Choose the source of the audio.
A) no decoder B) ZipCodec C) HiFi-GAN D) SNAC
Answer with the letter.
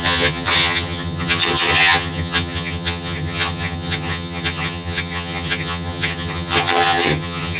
C